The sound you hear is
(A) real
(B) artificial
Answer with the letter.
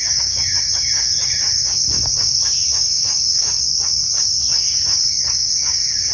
B